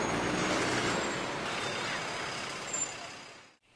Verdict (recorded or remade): recorded